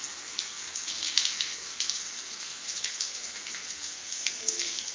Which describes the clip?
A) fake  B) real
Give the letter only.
A